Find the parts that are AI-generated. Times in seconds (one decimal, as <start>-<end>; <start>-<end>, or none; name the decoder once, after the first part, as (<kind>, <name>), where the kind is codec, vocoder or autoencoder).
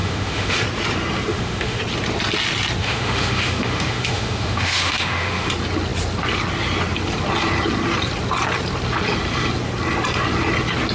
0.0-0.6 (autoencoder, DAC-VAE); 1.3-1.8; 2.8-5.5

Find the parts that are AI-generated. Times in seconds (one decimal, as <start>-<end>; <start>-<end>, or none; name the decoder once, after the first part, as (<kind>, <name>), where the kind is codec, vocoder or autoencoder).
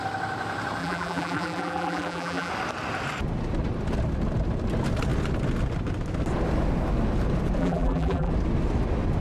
0.8-2.5 (vocoder, BigVGAN v2); 7.6-8.3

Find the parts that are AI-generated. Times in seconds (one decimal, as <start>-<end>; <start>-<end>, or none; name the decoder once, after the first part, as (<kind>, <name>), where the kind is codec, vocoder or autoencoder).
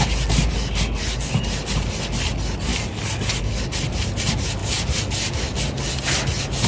none